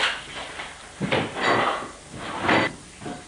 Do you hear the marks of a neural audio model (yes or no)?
no